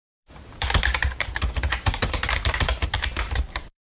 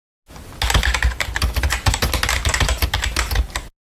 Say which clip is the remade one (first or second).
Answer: first